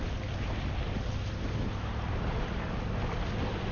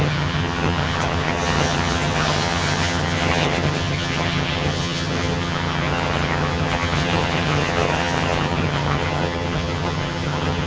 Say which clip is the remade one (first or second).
second